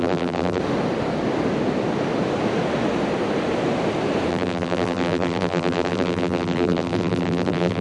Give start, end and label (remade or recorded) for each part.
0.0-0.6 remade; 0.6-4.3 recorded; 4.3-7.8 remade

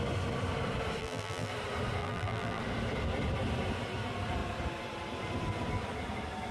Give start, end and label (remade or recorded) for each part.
0.0-1.0 recorded; 1.0-1.5 remade; 1.5-2.0 recorded; 2.0-2.6 remade; 2.6-6.5 recorded

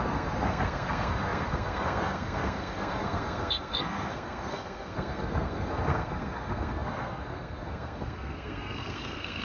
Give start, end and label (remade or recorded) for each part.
0.0-9.4 remade